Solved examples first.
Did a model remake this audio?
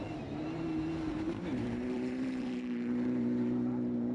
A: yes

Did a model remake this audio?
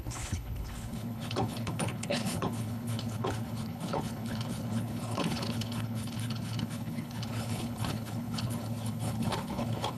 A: yes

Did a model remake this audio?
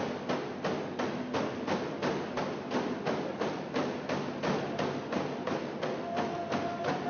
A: no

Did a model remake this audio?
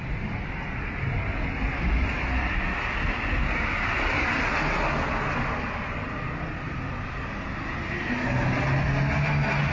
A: no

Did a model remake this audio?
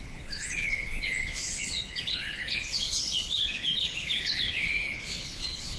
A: yes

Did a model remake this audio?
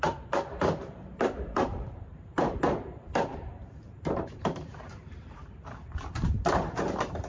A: yes